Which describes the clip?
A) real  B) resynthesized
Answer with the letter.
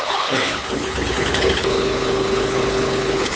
B